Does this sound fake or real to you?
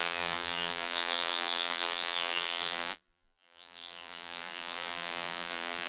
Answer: fake